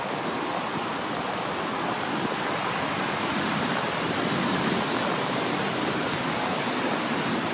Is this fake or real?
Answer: real